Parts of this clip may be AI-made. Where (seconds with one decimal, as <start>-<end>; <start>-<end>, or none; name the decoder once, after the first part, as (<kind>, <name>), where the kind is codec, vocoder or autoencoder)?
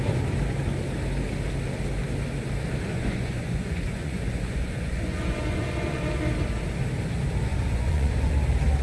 2.9-6.0 (vocoder, Vocos); 7.5-8.3